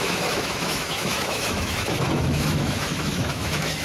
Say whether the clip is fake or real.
fake